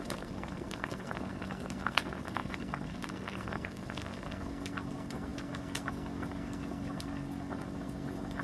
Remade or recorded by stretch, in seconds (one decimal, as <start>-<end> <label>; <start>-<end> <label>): 0.0-8.4 remade